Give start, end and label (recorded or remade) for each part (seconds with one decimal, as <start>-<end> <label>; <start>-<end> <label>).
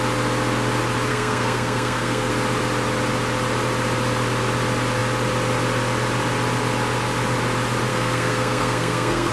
0.0-1.1 recorded; 1.1-2.3 remade; 2.3-7.9 recorded; 7.9-9.3 remade